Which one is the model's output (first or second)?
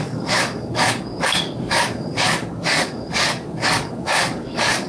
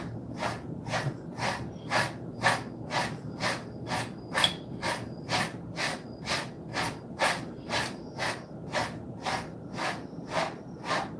first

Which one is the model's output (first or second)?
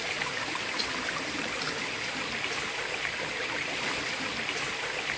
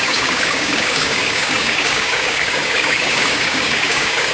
second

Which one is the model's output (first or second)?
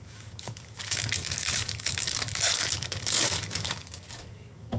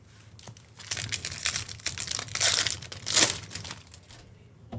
first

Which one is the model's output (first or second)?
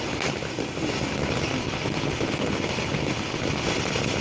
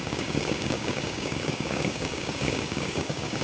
second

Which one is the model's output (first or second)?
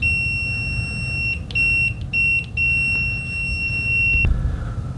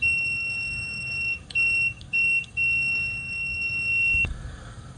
second